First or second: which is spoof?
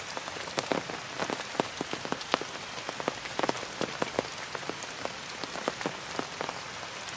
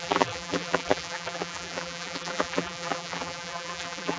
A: second